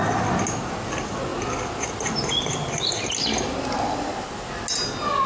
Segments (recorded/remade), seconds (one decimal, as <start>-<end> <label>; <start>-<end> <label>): 0.0-5.3 recorded